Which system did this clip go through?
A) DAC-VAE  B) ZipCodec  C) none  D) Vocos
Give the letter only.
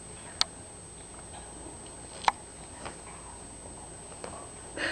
C